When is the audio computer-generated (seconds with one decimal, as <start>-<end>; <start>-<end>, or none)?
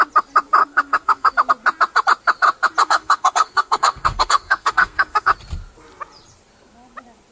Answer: 0.6-1.3; 2.8-5.3